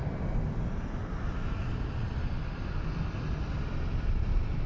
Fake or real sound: real